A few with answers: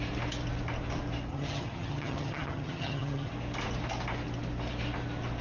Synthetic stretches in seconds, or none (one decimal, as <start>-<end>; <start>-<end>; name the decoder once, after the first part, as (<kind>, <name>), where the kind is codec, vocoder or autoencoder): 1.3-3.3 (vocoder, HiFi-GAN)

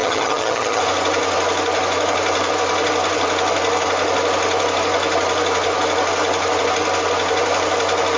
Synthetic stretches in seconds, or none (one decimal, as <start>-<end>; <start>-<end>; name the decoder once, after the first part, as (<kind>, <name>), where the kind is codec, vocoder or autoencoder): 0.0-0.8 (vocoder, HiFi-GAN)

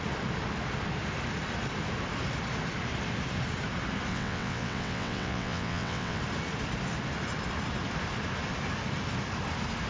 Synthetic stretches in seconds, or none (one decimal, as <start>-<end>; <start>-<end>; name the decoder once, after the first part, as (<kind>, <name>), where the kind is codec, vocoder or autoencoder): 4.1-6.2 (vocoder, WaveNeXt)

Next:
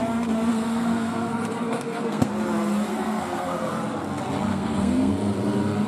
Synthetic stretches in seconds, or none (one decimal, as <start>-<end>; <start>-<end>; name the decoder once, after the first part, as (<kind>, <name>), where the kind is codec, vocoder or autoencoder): 0.5-2.3 (codec, SNAC); 2.9-3.7; 4.5-5.1

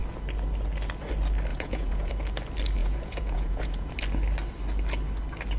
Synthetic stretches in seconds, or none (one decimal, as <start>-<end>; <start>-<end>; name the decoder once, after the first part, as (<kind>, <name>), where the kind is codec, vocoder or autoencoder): 1.5-2.1 (vocoder, Vocos); 2.8-3.9

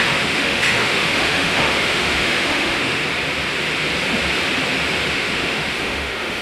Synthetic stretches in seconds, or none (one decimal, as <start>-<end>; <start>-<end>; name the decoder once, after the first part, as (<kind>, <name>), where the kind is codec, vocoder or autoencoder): 0.0-3.0 (autoencoder, DAC-VAE); 5.1-6.4